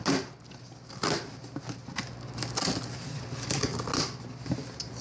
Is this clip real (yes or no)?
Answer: yes